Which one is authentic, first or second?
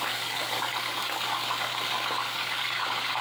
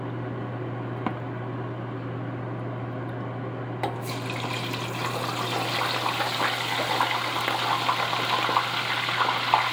second